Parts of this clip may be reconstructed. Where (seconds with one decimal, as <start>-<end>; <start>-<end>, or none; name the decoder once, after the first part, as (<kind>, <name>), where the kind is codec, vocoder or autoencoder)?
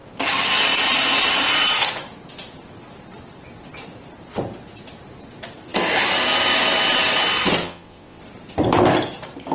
7.6-8.2 (vocoder, WaveNeXt)